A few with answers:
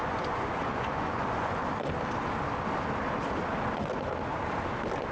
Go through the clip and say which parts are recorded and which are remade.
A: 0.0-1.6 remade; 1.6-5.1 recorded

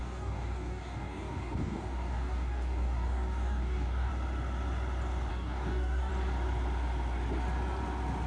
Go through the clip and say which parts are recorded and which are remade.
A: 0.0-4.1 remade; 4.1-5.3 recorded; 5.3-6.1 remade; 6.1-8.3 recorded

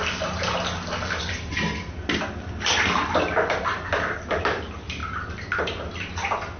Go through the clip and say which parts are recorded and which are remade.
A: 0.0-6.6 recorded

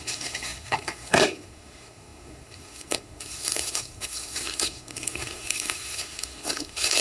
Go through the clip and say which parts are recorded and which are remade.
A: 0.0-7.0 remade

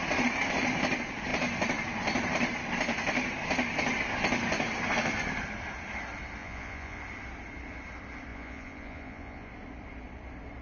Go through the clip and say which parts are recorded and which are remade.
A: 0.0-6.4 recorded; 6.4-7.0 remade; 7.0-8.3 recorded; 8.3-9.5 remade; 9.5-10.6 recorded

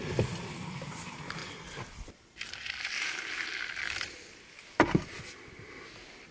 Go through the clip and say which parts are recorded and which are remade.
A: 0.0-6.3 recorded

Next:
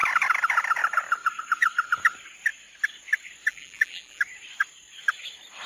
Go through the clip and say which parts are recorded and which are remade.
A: 0.0-3.5 recorded; 3.5-4.2 remade; 4.2-5.7 recorded